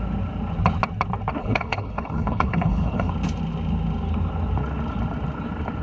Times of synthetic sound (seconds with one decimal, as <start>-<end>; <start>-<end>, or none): 1.4-3.1